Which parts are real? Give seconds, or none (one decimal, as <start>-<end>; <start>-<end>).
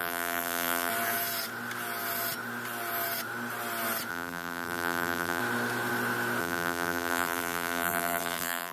0.9-4.1; 5.4-6.4